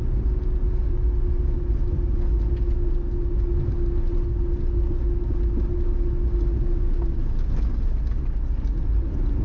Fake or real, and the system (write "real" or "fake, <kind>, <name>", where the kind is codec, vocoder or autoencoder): real